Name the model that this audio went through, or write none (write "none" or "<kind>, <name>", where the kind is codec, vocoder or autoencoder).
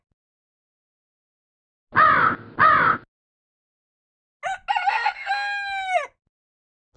none